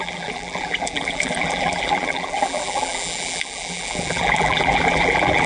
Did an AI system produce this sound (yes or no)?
yes